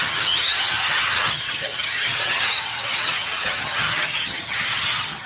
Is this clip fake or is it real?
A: fake